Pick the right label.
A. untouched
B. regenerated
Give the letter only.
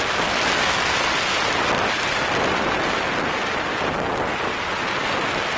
A